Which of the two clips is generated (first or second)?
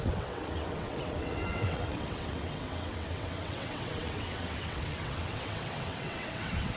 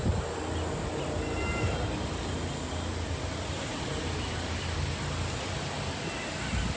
first